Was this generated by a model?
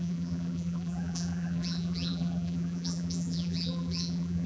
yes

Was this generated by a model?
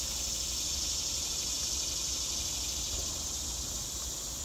no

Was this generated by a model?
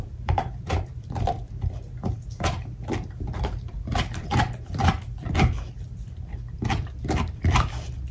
yes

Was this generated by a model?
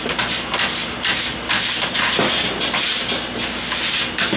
no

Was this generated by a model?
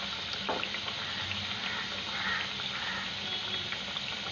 no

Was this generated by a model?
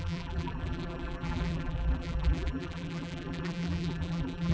yes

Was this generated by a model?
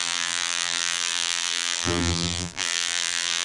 yes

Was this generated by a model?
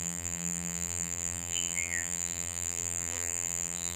yes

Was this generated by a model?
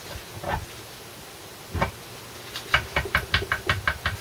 no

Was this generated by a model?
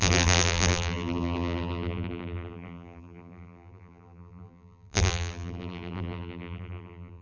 yes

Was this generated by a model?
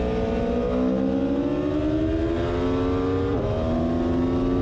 no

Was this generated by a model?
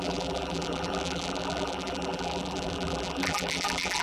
yes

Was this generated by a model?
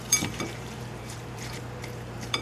yes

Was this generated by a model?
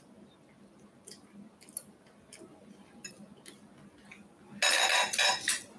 no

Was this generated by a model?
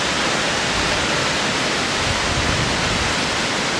no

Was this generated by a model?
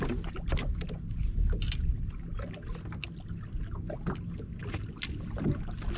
no